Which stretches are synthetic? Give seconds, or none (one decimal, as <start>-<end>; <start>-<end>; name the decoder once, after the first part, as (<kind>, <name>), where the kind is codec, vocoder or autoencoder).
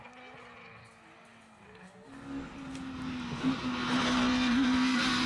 none